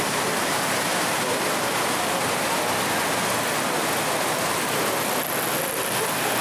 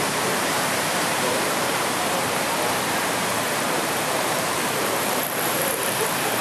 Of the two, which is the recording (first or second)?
first